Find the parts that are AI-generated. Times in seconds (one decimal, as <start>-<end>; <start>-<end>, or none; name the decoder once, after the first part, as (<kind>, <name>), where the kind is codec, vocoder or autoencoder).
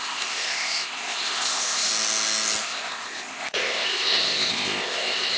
0.0-1.9 (codec, ZipCodec); 2.6-5.4